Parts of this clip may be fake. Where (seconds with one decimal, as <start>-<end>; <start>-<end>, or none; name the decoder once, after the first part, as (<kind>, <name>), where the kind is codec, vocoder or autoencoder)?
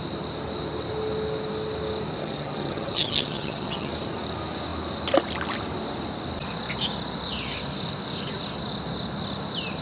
2.2-3.9 (vocoder, HiFi-GAN)